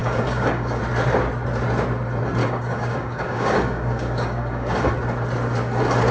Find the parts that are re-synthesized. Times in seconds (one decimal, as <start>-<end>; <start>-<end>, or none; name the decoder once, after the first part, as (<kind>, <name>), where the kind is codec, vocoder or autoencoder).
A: 0.0-0.8 (codec, DAC); 2.4-4.9